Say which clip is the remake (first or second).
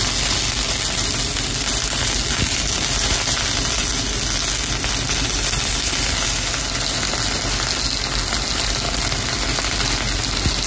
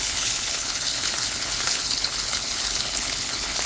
second